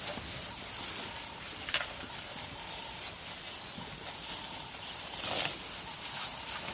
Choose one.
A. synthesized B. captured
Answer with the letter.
B